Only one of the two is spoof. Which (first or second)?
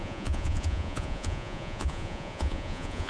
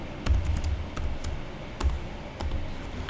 first